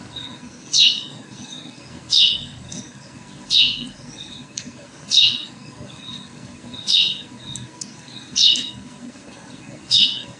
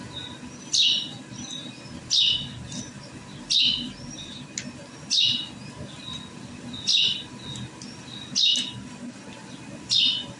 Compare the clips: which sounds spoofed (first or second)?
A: first